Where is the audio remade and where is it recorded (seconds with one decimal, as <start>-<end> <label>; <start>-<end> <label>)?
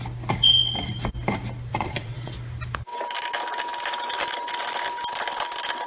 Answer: 0.0-1.7 recorded; 1.7-2.3 remade; 2.3-5.9 recorded